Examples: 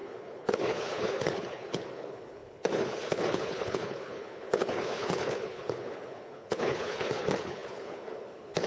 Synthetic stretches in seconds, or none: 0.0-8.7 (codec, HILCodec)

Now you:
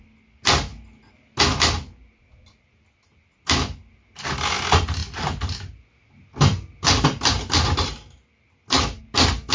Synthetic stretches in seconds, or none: none

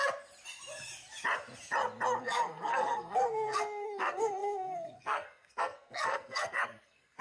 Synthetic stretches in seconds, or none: 2.2-7.2 (codec, SNAC)

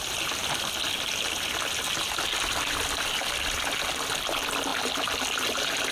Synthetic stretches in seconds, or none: none

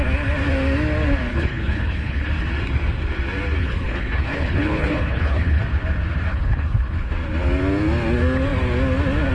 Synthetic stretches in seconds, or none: 1.3-2.3 (codec, HILCodec); 3.6-5.6; 6.3-7.1

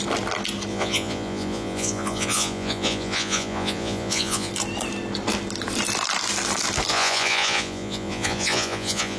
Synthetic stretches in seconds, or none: 0.7-4.5 (vocoder, Vocos); 6.9-9.2